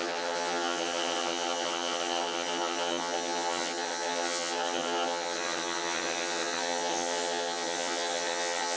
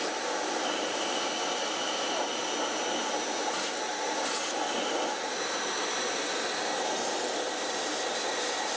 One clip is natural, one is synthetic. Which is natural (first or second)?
second